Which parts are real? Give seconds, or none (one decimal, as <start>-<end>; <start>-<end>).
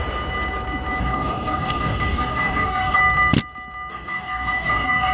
0.0-1.0; 3.0-3.9